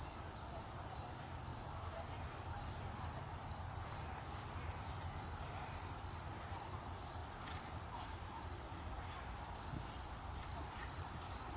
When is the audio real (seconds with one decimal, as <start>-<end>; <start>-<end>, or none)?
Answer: 1.5-2.1